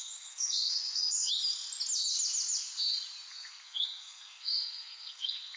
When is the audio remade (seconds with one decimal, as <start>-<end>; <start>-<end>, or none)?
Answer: 0.0-1.3; 3.3-5.6